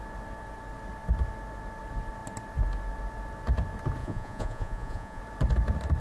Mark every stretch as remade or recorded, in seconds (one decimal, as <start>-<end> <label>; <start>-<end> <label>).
0.0-4.0 recorded; 4.0-5.2 remade; 5.2-6.0 recorded